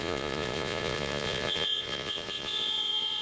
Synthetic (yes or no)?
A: yes